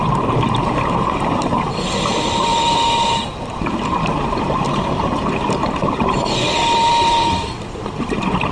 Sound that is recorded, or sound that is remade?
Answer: remade